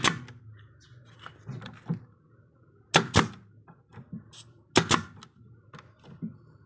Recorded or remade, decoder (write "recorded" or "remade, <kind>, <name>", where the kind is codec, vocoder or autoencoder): recorded